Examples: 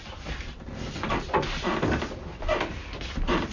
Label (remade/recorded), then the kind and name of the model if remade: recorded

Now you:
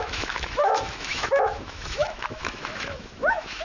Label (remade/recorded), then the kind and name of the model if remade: remade, autoencoder, DAC-VAE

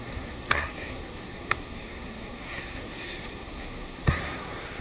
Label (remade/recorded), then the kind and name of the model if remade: remade, codec, SNAC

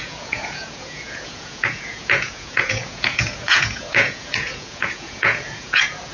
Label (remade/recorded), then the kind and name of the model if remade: remade, vocoder, Vocos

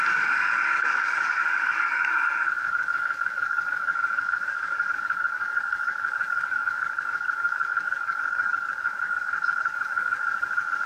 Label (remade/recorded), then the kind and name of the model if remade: remade, codec, DAC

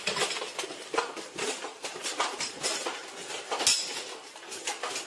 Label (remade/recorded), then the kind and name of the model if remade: recorded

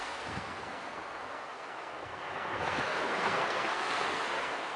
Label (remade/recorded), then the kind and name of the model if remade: remade, codec, SNAC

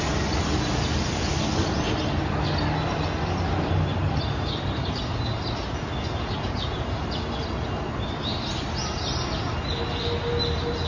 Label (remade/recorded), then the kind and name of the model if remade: recorded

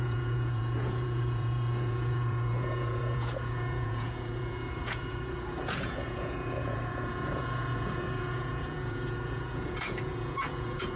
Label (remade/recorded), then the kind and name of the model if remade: remade, vocoder, Vocos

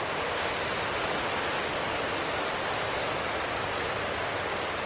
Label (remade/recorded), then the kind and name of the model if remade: recorded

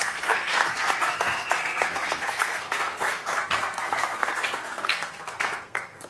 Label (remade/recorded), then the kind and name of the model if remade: remade, codec, SNAC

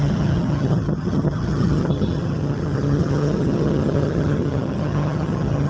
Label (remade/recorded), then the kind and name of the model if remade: remade, vocoder, HiFi-GAN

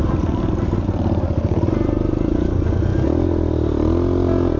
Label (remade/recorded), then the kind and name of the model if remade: recorded